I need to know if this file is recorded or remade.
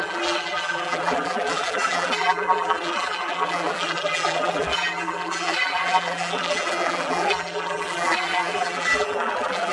remade